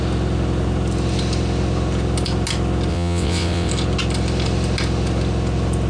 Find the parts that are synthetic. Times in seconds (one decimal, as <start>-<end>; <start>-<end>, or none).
2.9-3.7